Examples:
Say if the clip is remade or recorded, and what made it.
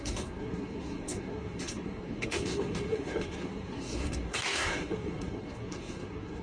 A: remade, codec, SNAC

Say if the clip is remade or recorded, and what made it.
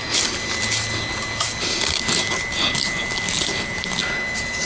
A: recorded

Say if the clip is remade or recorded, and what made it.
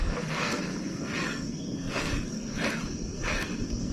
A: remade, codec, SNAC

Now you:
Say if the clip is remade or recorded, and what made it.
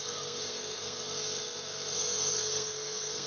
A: remade, codec, SNAC